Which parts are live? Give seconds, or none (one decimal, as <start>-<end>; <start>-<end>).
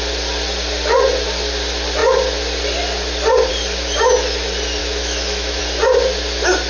0.0-4.8; 5.6-6.7